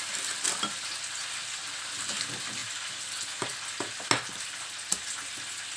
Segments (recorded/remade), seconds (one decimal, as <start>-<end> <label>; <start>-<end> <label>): 0.0-5.8 recorded